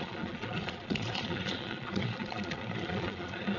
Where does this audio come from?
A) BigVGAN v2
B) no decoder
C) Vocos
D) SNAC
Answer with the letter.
C